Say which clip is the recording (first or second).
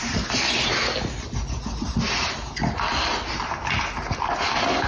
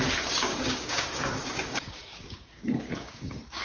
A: first